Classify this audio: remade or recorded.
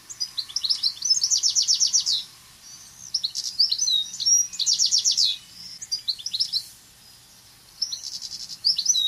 recorded